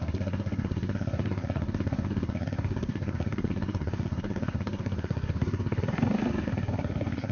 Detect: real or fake fake